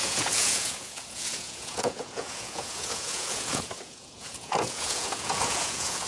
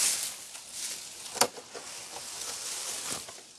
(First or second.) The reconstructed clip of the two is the first